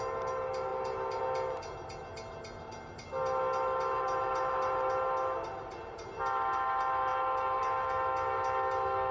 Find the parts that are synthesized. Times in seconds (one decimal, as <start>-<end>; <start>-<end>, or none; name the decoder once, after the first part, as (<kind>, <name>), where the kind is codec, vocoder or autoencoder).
none